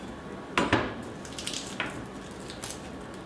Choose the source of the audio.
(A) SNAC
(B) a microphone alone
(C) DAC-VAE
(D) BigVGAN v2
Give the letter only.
B